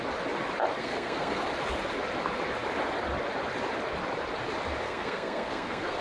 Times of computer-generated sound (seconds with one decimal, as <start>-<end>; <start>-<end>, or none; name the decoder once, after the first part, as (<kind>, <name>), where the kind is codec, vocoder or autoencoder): 0.8-1.4 (codec, SNAC); 4.8-6.0